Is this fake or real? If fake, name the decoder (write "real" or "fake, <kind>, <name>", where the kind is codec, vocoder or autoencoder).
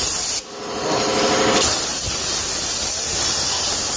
real